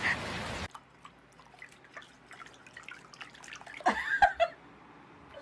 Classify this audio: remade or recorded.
recorded